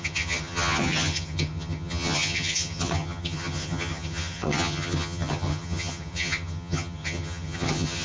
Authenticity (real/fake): fake